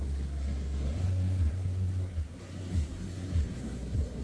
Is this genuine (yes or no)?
no